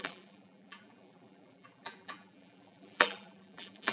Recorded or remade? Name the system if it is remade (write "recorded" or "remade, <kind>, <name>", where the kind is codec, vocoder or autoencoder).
remade, vocoder, BigVGAN v2